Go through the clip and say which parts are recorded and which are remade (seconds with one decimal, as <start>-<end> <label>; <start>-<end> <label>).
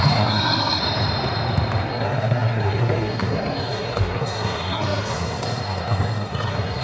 0.0-0.8 remade; 0.8-1.9 recorded; 1.9-6.8 remade